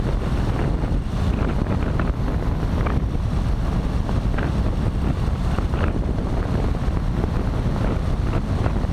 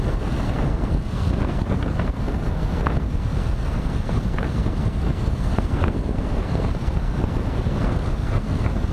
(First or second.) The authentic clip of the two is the first